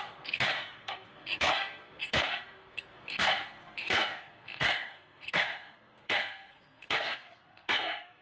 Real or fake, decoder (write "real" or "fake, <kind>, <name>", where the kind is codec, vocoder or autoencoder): fake, codec, SNAC